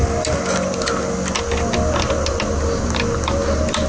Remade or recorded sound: recorded